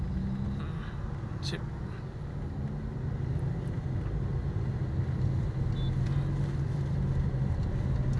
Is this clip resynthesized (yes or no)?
no